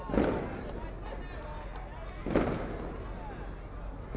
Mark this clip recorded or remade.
recorded